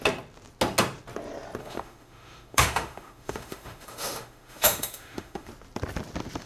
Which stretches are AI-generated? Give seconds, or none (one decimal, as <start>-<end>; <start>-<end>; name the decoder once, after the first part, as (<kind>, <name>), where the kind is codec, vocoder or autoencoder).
1.6-5.5 (autoencoder, DAC-VAE)